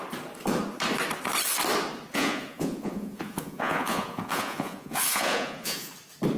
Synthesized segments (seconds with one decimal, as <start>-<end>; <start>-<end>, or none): 2.1-5.9